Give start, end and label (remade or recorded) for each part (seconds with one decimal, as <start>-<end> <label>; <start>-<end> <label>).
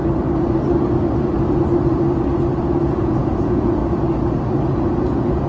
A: 0.0-2.8 recorded; 2.8-3.8 remade; 3.8-5.0 recorded; 5.0-5.5 remade